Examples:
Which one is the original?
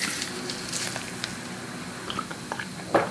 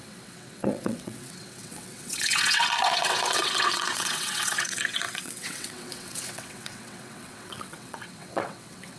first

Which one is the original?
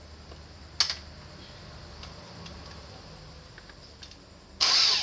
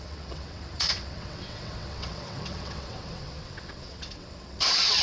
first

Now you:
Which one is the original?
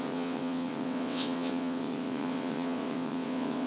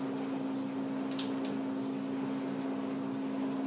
second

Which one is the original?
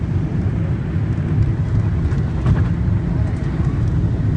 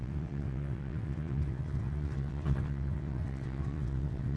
first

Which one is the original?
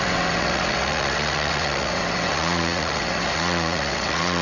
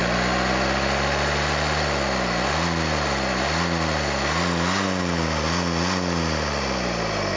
second